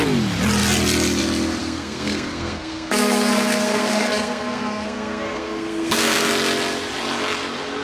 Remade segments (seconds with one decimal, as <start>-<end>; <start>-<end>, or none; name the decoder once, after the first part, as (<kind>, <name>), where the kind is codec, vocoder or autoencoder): 1.6-6.3 (codec, SNAC)